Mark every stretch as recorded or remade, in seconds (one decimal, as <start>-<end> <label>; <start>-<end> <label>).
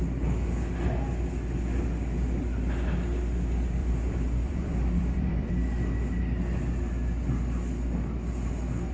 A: 0.0-3.8 recorded; 3.8-5.5 remade; 5.5-8.9 recorded